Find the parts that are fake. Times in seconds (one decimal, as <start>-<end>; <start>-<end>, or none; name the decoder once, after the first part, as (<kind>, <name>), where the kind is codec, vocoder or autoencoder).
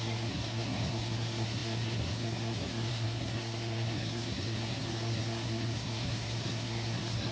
0.0-7.3 (codec, SNAC)